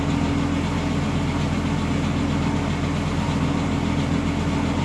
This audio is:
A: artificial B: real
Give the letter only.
B